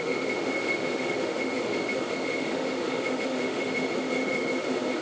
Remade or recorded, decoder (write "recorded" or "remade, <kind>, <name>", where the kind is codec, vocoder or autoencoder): remade, autoencoder, DAC-VAE